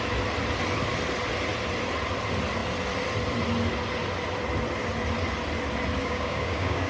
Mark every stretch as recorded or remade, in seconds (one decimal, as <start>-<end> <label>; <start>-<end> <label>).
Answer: 0.0-6.0 recorded; 6.0-6.9 remade